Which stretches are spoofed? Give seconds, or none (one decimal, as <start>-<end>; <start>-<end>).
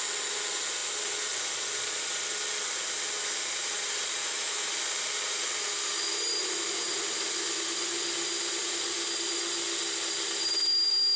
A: 4.2-4.7